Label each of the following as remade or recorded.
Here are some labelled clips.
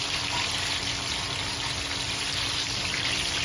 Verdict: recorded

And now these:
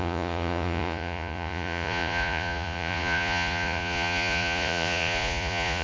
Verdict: remade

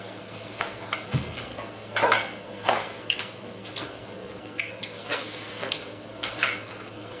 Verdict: remade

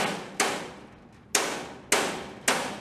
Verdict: recorded